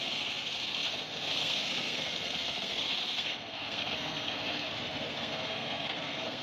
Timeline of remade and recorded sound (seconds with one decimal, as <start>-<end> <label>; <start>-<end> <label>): 0.0-6.4 remade